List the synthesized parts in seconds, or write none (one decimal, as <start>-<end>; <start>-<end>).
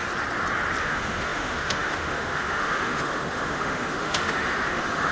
0.8-5.1